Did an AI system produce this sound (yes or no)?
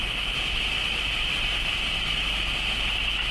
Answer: no